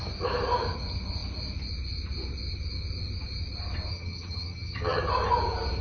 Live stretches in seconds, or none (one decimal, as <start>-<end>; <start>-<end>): 0.0-3.9; 5.0-5.8